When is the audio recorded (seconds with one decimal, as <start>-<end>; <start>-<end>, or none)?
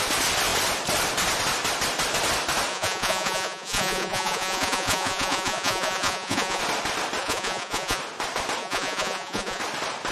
0.0-2.7; 6.6-7.2; 8.0-8.6; 9.6-10.1